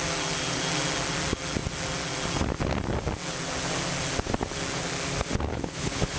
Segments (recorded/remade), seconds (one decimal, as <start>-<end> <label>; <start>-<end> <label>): 0.0-5.5 recorded; 5.5-6.2 remade

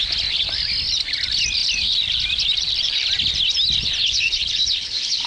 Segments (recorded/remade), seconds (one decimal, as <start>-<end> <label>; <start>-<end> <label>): 0.0-4.0 recorded; 4.0-5.3 remade

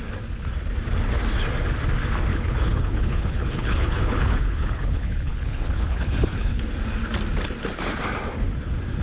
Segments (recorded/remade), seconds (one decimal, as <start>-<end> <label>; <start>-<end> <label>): 0.0-2.3 recorded; 2.3-6.6 remade; 6.6-9.0 recorded